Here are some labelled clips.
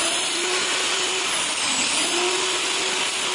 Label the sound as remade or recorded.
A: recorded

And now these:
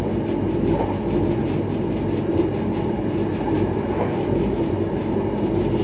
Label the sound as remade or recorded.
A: recorded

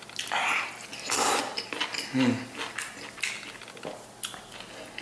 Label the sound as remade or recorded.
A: recorded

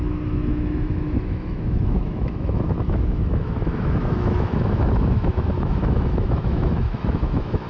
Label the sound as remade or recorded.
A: remade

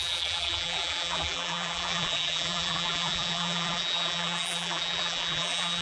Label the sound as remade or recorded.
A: remade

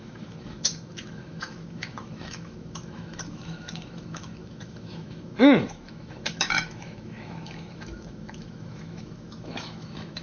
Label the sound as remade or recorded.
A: remade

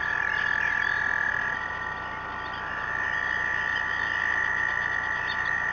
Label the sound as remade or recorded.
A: recorded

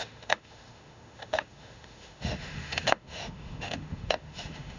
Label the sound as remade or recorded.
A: remade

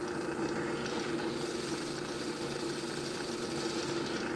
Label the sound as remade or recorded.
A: recorded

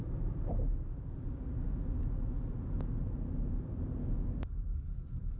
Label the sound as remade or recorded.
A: recorded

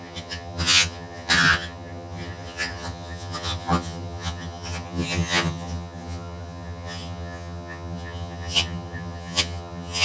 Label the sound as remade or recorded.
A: remade